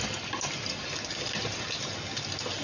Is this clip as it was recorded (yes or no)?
yes